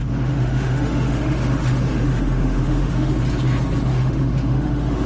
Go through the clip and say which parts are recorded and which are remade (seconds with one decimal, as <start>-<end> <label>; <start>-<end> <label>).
0.0-3.1 remade; 3.1-3.9 recorded; 3.9-5.1 remade